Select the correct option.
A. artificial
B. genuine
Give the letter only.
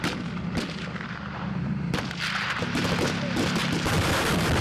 A